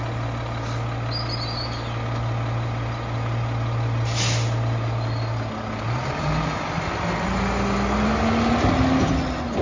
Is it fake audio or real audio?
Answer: real